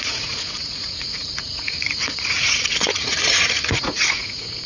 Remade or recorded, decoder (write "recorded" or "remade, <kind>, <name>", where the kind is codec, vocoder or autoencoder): remade, vocoder, Vocos